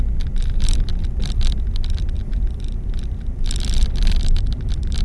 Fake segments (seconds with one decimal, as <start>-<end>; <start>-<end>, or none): 0.0-5.0